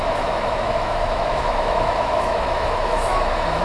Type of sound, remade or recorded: remade